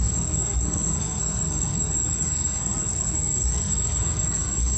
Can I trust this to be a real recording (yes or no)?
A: no